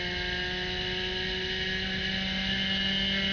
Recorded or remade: recorded